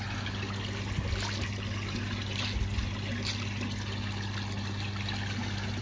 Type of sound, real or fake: real